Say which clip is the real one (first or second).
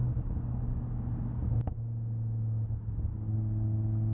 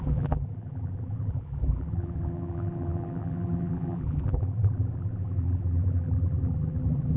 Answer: first